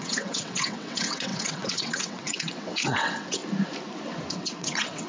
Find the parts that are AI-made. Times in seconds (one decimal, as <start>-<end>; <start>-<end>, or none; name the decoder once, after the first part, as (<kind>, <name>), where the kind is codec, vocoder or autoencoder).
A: 0.0-3.4 (vocoder, WaveNeXt); 4.3-5.1